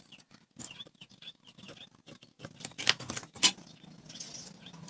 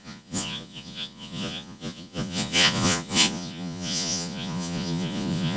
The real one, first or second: first